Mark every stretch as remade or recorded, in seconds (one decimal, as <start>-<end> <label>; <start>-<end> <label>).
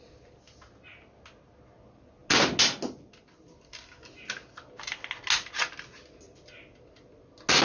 0.0-7.6 recorded